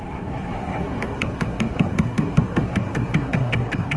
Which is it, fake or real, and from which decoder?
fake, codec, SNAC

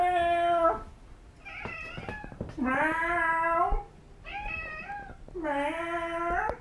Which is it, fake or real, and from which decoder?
real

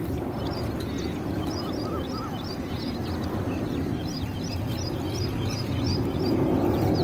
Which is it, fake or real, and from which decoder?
real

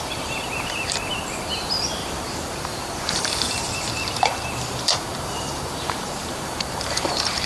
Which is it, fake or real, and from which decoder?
fake, vocoder, BigVGAN v2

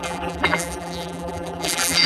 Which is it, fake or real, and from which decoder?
fake, vocoder, BigVGAN v2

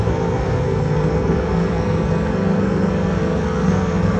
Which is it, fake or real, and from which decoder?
fake, codec, SNAC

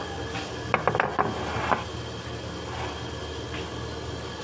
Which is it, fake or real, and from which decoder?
real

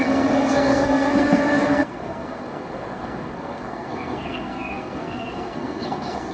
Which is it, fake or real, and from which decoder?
fake, codec, SNAC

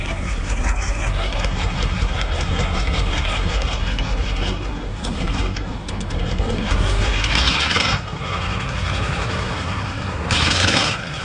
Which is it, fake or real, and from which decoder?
fake, codec, SNAC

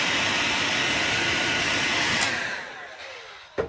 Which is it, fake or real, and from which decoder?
real